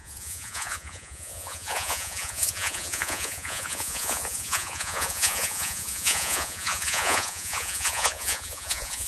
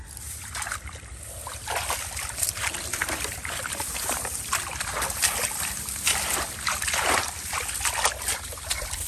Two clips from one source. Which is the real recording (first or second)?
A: second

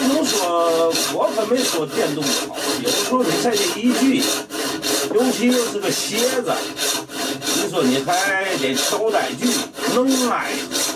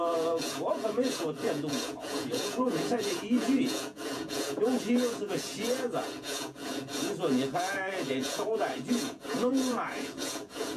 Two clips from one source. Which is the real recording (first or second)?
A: first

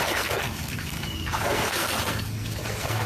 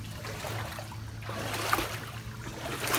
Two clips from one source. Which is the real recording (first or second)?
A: second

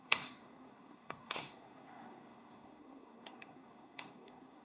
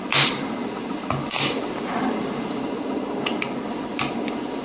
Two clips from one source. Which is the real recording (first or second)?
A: second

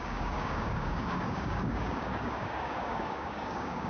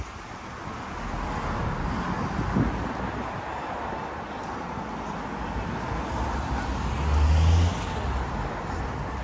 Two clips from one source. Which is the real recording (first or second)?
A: second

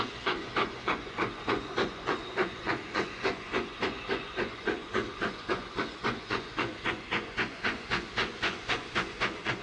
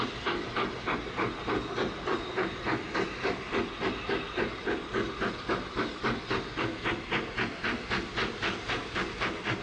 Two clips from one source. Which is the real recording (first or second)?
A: second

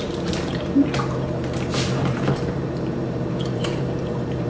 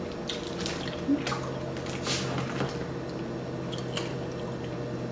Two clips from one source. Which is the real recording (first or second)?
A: second